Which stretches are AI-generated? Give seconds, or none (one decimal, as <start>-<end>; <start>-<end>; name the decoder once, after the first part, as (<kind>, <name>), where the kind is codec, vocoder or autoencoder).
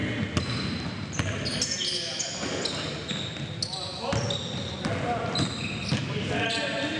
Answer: none